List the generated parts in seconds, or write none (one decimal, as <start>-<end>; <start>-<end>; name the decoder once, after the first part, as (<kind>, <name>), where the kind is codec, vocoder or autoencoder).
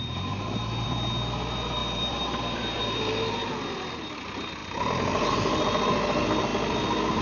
none